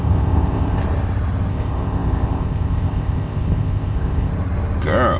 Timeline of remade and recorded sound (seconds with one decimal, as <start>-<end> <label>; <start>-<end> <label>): 0.0-0.8 remade; 0.8-1.5 recorded; 1.5-4.3 remade; 4.3-5.2 recorded